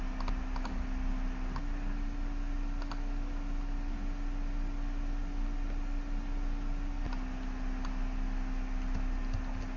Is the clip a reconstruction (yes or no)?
no